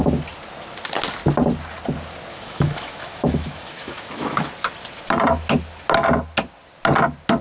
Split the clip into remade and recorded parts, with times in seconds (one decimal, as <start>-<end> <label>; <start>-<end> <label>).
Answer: 0.0-2.3 recorded; 2.3-4.5 remade; 4.5-7.4 recorded